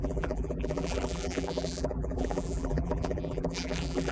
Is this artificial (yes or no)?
yes